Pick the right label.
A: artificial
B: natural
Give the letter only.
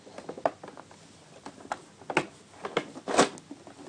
B